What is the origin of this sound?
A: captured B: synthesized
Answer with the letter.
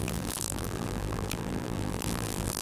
B